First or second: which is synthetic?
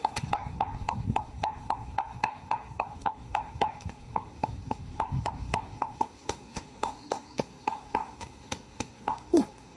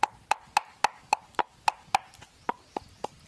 first